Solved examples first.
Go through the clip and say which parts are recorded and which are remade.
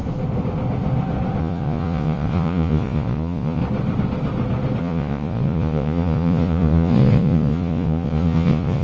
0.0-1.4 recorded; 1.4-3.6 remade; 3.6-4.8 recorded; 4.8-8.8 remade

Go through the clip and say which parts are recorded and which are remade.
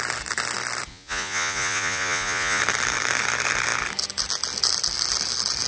0.0-0.9 recorded; 0.9-2.6 remade; 2.6-5.7 recorded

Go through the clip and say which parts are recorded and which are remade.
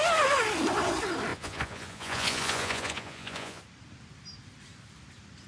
0.0-1.3 recorded; 1.3-3.6 remade; 3.6-5.5 recorded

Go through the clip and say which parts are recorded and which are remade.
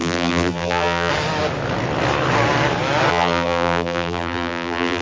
0.0-1.1 remade; 1.1-3.1 recorded; 3.1-5.0 remade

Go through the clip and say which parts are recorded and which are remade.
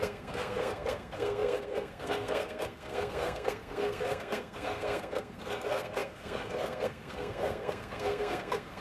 0.0-8.8 remade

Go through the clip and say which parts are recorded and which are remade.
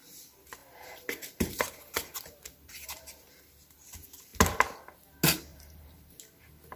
0.0-0.6 recorded; 0.6-3.5 remade; 3.5-5.5 recorded; 5.5-6.2 remade; 6.2-6.8 recorded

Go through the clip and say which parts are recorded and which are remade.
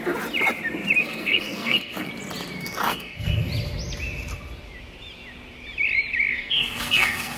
0.0-1.0 recorded; 1.0-2.1 remade; 2.1-2.6 recorded; 2.6-3.5 remade; 3.5-6.3 recorded; 6.3-7.4 remade